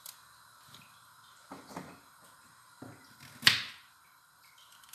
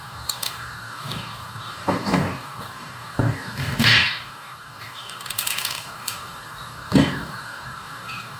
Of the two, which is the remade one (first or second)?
second